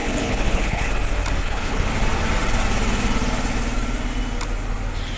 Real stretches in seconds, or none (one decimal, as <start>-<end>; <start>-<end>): 0.9-1.4; 1.9-5.2